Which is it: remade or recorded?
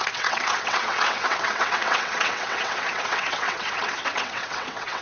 remade